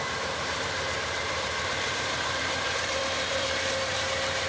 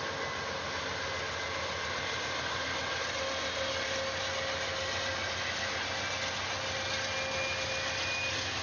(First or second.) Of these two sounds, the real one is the second